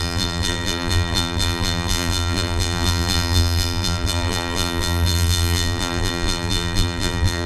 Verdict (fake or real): fake